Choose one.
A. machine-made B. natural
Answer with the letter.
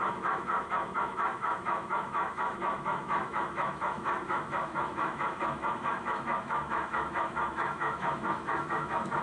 A